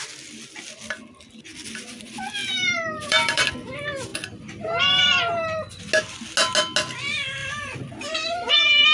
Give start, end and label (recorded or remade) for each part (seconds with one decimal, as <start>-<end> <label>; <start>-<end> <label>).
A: 0.0-1.5 recorded; 1.5-2.0 remade; 2.0-2.4 recorded; 2.4-3.5 remade; 3.5-4.1 recorded; 4.1-5.8 remade; 5.8-7.4 recorded; 7.4-8.5 remade; 8.5-8.9 recorded